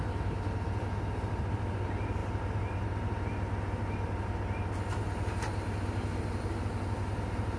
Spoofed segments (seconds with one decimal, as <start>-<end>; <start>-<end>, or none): none